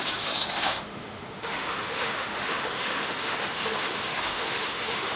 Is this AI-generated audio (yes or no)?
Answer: yes